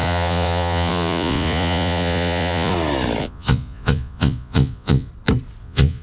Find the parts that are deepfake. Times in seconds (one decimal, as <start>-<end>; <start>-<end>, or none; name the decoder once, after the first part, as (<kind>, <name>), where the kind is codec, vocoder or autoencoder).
0.0-2.7 (vocoder, Vocos); 3.2-5.1; 5.6-6.0